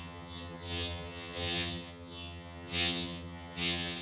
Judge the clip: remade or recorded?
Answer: remade